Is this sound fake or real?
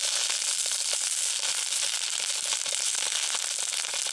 real